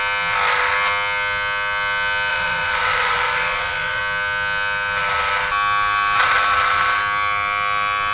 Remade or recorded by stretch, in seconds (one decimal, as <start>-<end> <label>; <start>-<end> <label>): 0.0-2.3 recorded; 2.3-4.0 remade; 4.0-8.1 recorded